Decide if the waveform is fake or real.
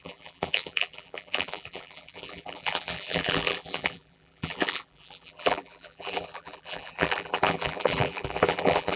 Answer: fake